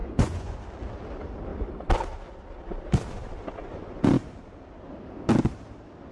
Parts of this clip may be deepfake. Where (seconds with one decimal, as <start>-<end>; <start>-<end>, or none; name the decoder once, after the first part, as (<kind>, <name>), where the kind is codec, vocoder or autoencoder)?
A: 0.0-0.6 (vocoder, Vocos); 3.6-4.1